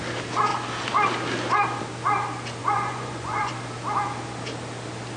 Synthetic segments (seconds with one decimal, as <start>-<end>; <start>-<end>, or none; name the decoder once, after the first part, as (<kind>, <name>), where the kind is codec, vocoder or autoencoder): 2.6-3.5 (vocoder, Vocos)